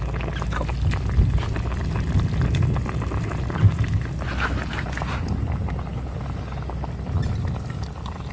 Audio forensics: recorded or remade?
recorded